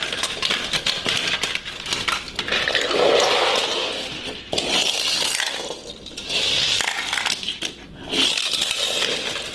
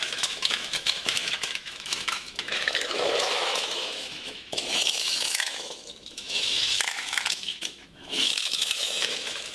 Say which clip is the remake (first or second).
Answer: second